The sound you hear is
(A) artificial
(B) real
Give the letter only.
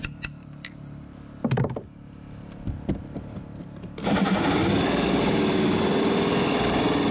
B